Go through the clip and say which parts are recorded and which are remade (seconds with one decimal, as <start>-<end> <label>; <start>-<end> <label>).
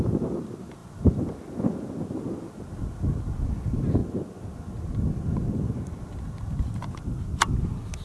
0.0-8.0 recorded